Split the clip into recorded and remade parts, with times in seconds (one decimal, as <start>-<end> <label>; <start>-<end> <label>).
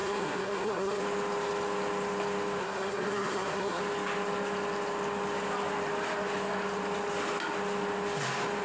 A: 0.0-1.0 remade; 1.0-2.6 recorded; 2.6-3.8 remade; 3.8-8.6 recorded